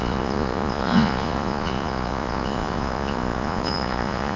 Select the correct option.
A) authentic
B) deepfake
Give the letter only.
B